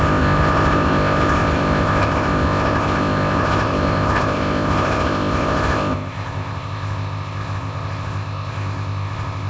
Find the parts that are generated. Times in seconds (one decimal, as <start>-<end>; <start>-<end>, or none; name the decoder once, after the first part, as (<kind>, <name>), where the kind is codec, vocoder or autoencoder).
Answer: 0.0-9.5 (codec, ZipCodec)

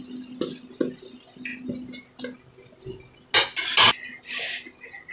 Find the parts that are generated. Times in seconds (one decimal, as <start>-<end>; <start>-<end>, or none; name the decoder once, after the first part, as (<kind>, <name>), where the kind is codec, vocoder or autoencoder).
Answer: none